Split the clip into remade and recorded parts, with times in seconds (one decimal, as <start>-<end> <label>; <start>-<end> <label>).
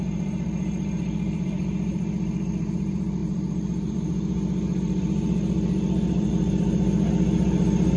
0.0-8.0 remade